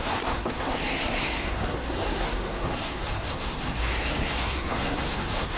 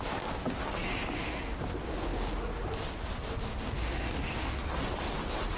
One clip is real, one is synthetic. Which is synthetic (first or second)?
first